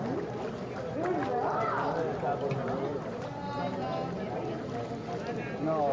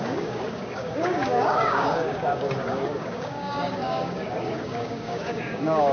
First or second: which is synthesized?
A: second